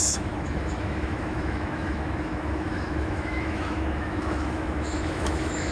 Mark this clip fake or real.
fake